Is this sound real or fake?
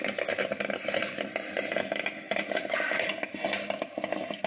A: real